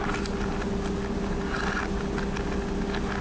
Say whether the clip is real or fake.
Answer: real